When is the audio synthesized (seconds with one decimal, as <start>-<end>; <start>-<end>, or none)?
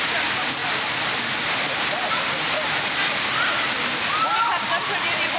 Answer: none